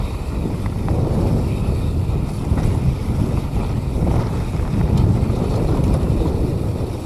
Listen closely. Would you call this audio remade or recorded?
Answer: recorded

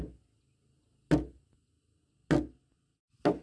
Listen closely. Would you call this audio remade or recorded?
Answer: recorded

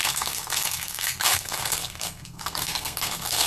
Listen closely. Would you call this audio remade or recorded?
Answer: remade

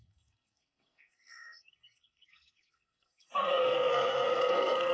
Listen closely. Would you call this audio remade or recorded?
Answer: remade